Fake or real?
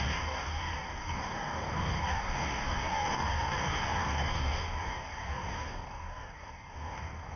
fake